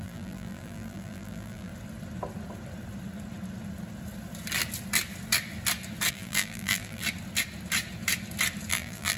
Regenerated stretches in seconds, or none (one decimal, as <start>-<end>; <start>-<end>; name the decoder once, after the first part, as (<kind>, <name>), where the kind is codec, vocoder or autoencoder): 0.0-1.7 (vocoder, BigVGAN v2); 6.1-7.0; 8.7-9.2